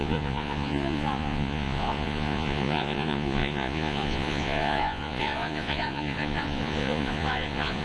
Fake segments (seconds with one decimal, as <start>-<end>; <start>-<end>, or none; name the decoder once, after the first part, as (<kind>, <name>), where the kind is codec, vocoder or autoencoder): 0.0-7.8 (vocoder, Vocos)